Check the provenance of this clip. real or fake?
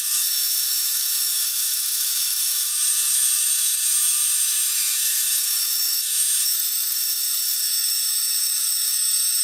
fake